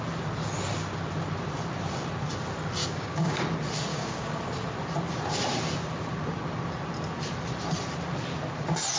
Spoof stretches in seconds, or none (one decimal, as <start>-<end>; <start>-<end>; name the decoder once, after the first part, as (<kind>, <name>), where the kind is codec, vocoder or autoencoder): 2.8-3.4 (codec, DAC); 3.9-4.4